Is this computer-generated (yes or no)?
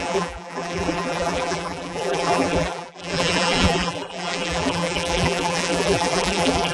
yes